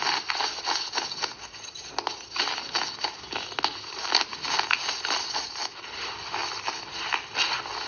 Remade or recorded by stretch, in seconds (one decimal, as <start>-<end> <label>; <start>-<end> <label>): 0.0-7.9 recorded